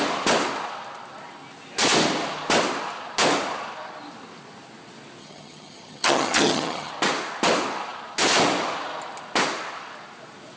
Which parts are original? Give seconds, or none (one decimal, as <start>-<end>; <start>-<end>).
0.0-5.2; 6.9-10.6